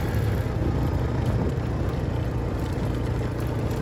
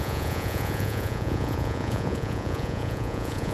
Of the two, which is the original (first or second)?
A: first